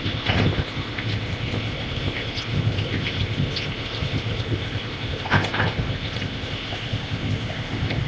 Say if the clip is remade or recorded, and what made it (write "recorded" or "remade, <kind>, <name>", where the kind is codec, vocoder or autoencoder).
remade, codec, ZipCodec